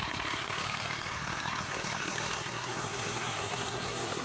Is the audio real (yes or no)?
no